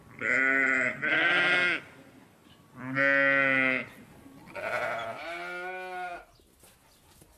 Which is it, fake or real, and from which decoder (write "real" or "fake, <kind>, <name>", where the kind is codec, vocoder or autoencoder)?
real